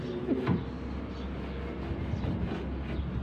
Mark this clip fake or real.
real